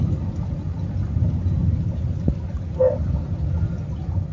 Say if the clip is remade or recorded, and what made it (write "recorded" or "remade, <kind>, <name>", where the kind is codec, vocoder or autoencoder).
recorded